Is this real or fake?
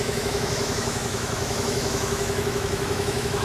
fake